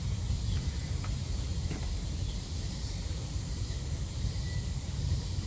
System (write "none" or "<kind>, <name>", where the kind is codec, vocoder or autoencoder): vocoder, BigVGAN v2